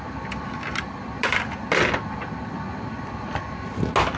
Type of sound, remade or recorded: recorded